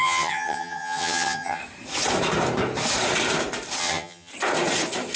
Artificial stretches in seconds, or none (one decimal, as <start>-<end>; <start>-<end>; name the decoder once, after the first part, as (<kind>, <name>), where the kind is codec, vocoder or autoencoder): 0.0-1.6 (vocoder, HiFi-GAN); 3.8-4.3

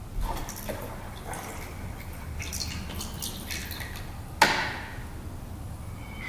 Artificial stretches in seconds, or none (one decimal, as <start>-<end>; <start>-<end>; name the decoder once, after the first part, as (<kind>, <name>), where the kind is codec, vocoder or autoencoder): none

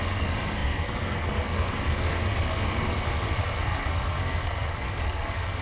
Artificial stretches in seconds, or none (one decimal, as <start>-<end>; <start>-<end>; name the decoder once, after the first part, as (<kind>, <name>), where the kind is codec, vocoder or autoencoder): 0.0-5.6 (codec, SNAC)

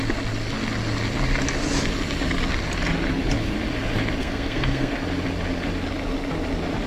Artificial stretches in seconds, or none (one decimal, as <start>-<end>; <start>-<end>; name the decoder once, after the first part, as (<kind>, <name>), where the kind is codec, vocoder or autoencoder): 4.2-4.9 (codec, SNAC)

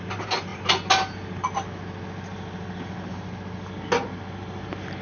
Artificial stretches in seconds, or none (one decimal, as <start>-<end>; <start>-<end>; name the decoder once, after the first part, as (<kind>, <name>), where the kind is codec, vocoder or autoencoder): none

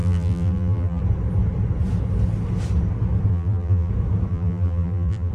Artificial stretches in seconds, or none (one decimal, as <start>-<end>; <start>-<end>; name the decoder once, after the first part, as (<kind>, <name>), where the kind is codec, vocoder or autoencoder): 0.0-1.0 (vocoder, BigVGAN v2); 3.3-3.9; 4.3-5.3

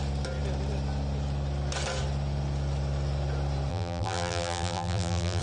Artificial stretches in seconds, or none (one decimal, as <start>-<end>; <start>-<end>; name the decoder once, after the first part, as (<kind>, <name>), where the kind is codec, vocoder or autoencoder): 3.7-5.4 (vocoder, BigVGAN v2)